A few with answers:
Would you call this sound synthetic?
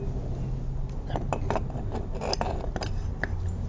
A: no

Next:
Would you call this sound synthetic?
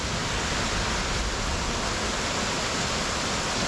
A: no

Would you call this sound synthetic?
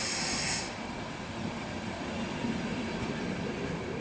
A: yes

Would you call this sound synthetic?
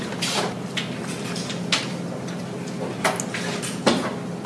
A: no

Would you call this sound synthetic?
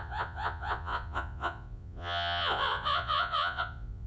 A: yes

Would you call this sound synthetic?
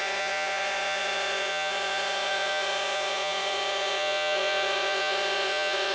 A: yes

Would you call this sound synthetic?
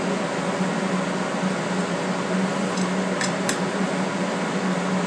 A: no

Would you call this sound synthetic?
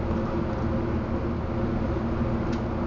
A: no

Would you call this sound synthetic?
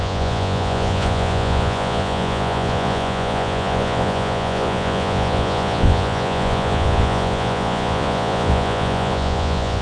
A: yes